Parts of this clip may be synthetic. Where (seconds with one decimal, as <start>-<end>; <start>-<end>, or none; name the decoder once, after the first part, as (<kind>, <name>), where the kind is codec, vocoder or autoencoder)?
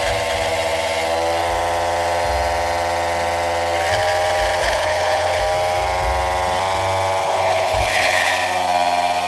4.6-5.4 (codec, HILCodec); 7.2-8.3